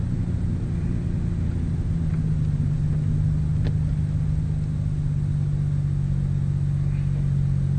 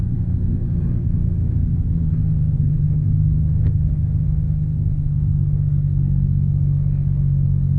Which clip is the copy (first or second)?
second